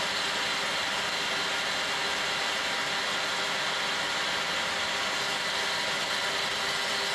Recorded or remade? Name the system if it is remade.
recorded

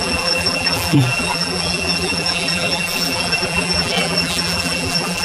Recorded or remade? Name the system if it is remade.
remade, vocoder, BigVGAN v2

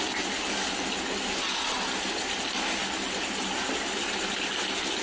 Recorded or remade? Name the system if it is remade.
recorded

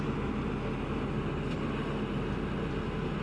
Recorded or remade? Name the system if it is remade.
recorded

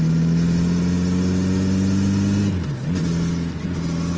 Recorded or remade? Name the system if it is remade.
recorded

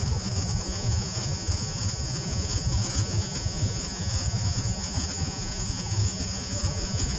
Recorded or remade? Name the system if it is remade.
remade, vocoder, Vocos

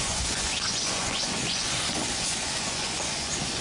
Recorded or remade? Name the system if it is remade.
remade, vocoder, Vocos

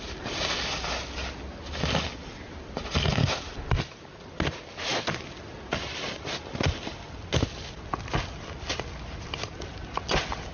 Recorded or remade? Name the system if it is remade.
recorded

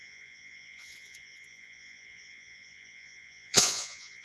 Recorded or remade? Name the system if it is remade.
remade, vocoder, Vocos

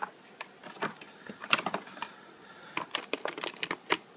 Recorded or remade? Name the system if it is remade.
recorded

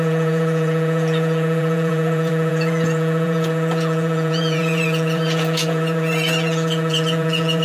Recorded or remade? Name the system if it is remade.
remade, vocoder, Vocos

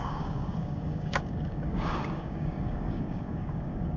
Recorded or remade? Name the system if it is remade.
remade, codec, DAC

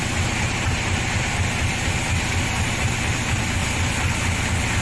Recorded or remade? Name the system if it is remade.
recorded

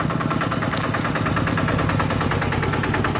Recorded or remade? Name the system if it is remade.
recorded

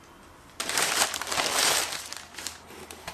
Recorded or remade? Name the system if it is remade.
remade, vocoder, BigVGAN v2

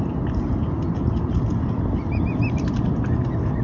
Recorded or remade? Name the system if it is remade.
recorded